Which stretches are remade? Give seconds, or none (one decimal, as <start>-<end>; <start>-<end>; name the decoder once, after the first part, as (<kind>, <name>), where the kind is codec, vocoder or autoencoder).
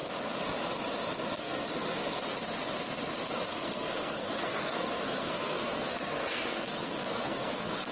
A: 1.4-2.2 (codec, SNAC); 3.5-7.9